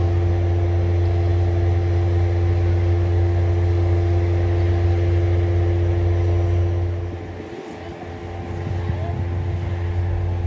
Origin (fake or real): real